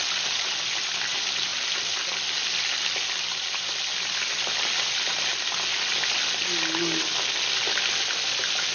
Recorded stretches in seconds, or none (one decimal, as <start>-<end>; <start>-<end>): 0.0-8.7